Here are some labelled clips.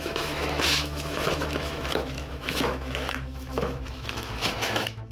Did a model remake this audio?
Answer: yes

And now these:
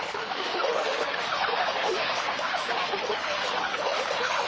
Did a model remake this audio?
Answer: yes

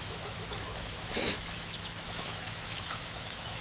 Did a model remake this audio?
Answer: yes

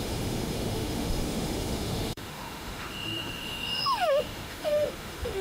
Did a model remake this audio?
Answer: yes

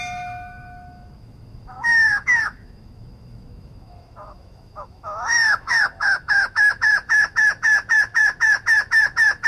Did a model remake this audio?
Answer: yes